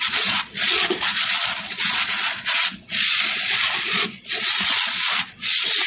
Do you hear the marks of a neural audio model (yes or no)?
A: yes